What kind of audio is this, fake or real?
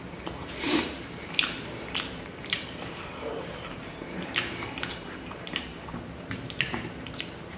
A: fake